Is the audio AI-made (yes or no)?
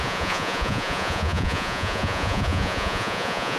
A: yes